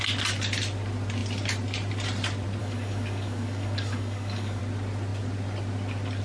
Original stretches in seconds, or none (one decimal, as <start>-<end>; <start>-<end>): 0.0-2.6; 4.6-6.2